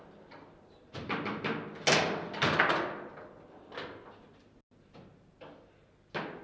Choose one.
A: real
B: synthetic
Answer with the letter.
A